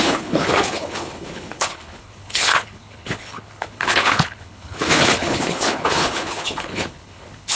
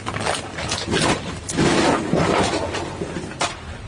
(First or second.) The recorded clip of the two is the second